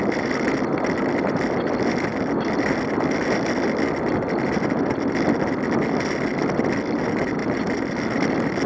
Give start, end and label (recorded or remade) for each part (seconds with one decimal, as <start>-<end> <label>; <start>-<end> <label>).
0.0-8.7 recorded